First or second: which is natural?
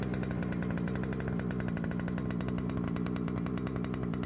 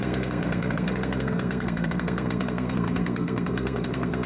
first